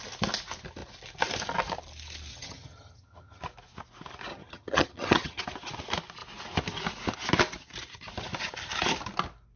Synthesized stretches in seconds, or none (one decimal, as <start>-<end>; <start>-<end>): 2.3-3.4; 4.3-5.4